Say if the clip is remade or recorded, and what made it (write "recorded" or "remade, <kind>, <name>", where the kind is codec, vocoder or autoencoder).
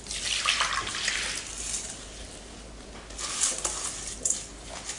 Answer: recorded